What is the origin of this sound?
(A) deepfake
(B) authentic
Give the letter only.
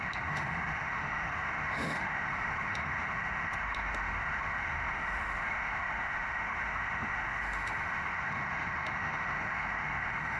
A